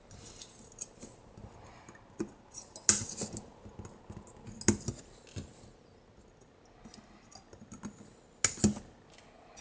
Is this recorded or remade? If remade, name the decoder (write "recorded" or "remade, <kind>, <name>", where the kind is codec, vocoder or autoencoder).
recorded